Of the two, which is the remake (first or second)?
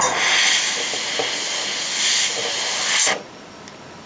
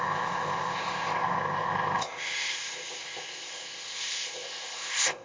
second